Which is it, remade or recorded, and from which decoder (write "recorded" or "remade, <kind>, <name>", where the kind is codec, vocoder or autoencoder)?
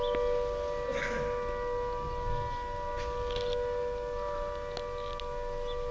recorded